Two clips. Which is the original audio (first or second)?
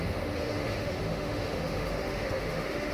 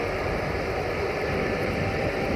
second